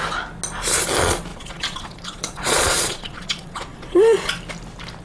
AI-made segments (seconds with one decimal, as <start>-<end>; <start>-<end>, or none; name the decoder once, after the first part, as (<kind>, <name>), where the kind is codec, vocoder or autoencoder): 1.3-4.3 (vocoder, Vocos)